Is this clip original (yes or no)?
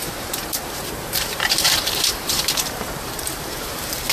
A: no